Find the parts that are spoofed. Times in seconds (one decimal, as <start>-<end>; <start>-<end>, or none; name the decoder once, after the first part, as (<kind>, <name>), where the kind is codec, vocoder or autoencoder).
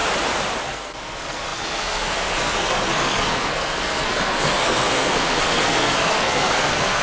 0.6-7.0 (codec, SNAC)